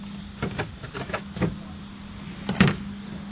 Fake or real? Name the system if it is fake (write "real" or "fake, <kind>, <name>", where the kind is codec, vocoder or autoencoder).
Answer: real